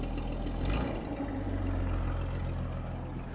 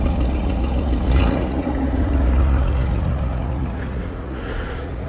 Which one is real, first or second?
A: first